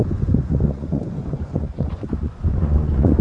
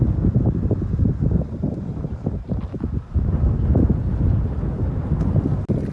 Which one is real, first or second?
second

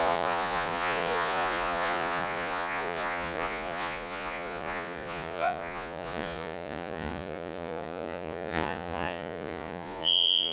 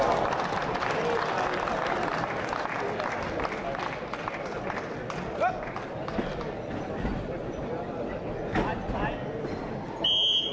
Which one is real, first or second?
second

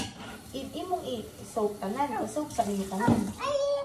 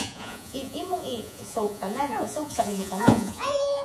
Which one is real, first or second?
first